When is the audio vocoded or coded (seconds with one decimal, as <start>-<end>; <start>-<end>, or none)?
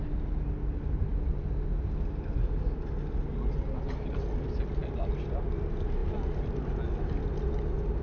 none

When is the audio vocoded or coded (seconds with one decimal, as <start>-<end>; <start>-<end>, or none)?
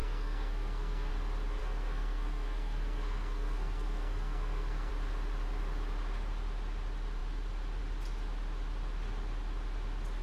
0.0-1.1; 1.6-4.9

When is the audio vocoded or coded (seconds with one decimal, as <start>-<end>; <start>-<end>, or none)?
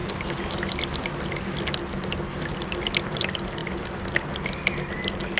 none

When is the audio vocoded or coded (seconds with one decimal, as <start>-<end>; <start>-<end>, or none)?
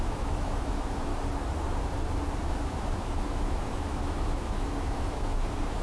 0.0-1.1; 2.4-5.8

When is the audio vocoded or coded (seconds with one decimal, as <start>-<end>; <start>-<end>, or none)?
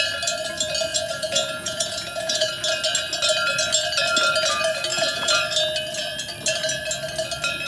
0.9-2.5; 4.9-5.4